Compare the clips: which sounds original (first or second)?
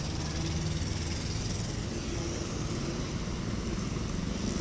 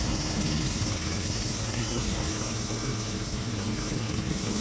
first